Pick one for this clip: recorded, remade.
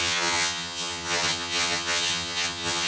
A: remade